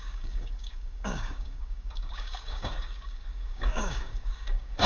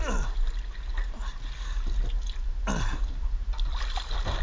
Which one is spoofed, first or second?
first